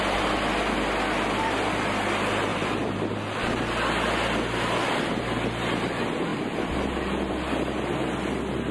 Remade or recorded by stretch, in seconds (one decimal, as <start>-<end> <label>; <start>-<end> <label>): 0.0-2.5 recorded; 2.5-3.4 remade; 3.4-8.7 recorded